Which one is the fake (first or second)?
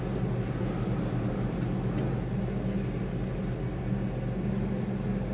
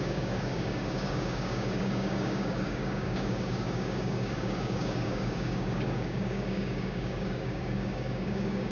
second